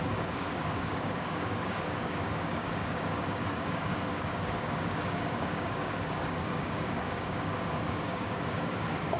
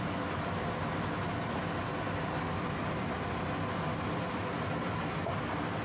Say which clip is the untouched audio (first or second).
second